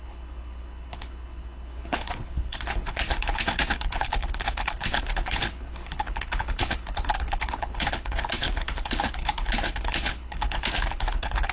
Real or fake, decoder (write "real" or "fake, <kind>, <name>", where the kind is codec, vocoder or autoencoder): fake, codec, HILCodec